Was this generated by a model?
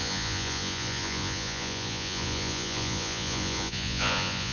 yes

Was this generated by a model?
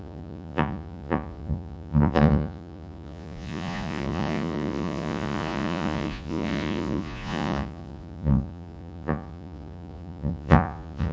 yes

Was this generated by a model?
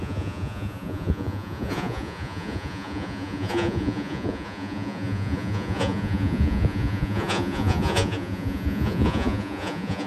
yes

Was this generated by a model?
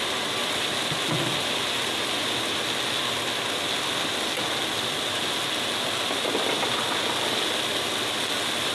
no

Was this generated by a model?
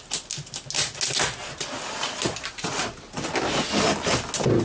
no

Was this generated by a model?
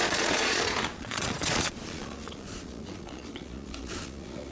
yes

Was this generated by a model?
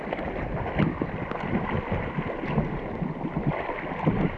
no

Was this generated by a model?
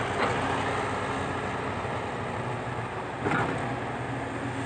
no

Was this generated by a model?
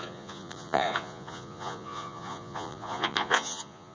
yes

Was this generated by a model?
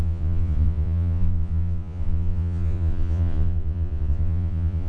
yes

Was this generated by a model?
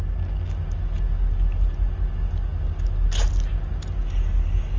no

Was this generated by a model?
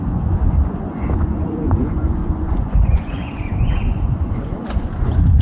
yes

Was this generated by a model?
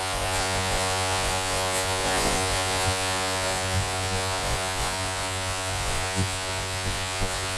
yes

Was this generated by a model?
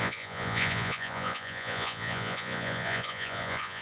yes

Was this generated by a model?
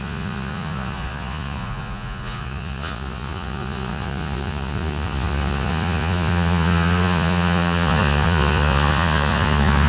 yes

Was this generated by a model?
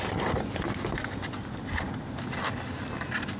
no